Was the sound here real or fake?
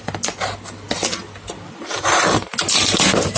real